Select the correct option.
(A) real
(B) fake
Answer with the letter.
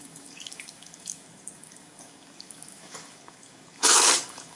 B